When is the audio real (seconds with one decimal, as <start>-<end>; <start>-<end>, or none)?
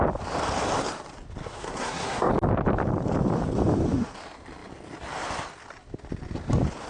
0.0-1.4; 2.3-6.9